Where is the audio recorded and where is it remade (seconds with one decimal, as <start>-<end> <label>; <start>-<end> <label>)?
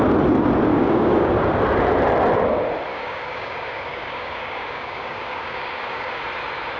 0.0-0.7 recorded; 0.7-1.3 remade; 1.3-2.9 recorded; 2.9-6.2 remade; 6.2-6.8 recorded